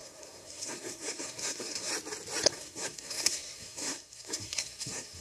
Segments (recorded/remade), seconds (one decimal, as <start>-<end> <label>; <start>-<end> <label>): 0.0-1.9 remade; 1.9-2.5 recorded; 2.5-5.2 remade

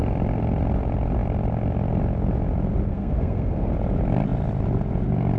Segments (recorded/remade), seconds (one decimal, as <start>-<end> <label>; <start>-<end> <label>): 0.0-2.9 recorded; 2.9-3.7 remade; 3.7-5.4 recorded

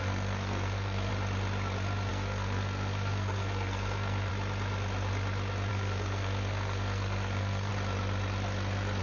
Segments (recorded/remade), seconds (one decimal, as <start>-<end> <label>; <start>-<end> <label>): 0.0-1.1 remade; 1.1-2.1 recorded; 2.1-4.3 remade; 4.3-5.7 recorded; 5.7-7.7 remade; 7.7-9.0 recorded

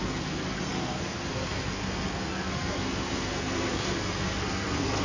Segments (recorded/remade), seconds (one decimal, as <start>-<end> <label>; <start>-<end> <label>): 0.0-5.0 remade

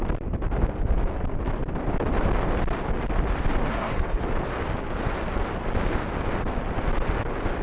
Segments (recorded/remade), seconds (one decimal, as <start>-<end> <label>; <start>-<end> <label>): 0.0-3.7 recorded; 3.7-4.2 remade; 4.2-7.6 recorded

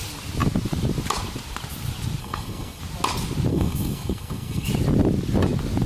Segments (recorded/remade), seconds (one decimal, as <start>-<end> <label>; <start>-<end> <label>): 0.0-2.2 recorded; 2.2-2.8 remade; 2.8-3.5 recorded; 3.5-4.7 remade; 4.7-5.9 recorded

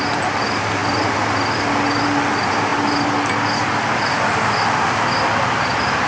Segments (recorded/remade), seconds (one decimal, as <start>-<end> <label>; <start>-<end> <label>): 0.0-6.1 recorded